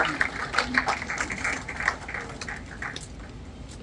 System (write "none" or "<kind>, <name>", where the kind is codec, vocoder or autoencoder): none